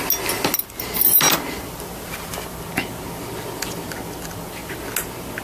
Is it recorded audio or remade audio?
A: recorded